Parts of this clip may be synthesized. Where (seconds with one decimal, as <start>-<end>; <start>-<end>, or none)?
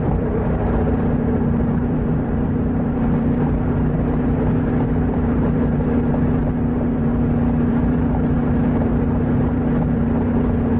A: 0.0-7.1; 7.7-10.8